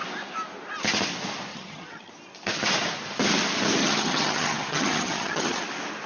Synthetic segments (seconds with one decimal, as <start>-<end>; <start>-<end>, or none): 1.5-2.1; 3.8-5.6